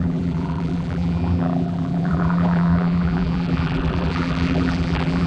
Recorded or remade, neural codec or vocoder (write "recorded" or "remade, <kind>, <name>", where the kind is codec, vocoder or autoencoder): remade, vocoder, BigVGAN v2